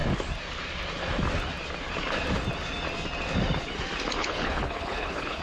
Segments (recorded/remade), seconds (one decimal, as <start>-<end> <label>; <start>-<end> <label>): 0.0-4.2 recorded; 4.2-5.4 remade